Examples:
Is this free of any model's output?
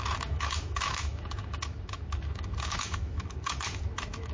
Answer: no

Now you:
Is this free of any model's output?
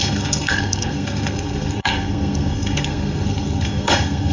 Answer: no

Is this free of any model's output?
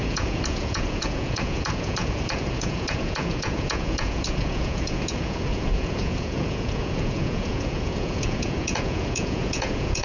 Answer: no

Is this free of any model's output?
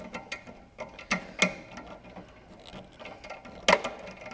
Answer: yes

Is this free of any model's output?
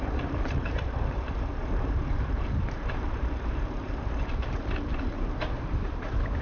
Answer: no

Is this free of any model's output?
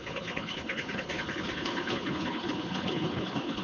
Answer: no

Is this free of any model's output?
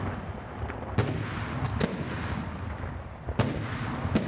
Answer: yes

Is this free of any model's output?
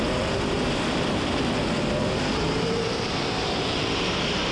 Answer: no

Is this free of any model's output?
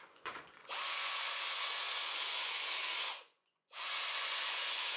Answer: no